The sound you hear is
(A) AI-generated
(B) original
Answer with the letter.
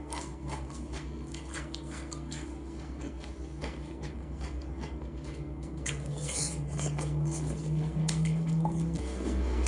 A